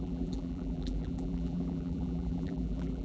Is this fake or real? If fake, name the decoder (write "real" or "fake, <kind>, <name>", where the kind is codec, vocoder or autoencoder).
fake, vocoder, BigVGAN v2